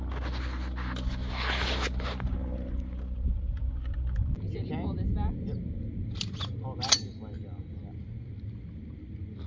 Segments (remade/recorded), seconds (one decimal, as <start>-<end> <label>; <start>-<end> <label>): 0.0-9.5 recorded